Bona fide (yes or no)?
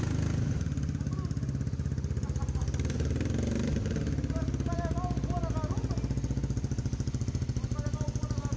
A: yes